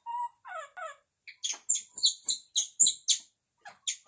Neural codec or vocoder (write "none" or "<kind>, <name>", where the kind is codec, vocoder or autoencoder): none